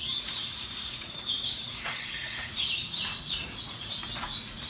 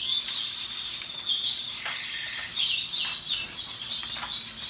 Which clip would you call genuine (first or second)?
second